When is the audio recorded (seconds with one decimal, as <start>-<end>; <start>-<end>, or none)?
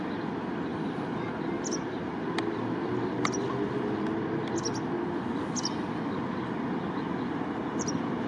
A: 0.0-8.3